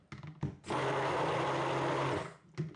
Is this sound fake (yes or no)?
no